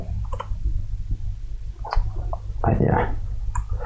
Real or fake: real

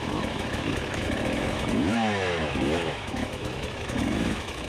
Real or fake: fake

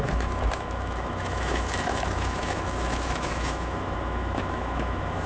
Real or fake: fake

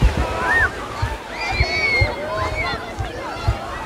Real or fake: real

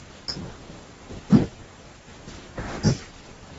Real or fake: real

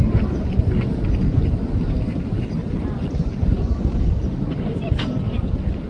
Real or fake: real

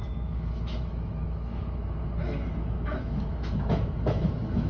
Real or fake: fake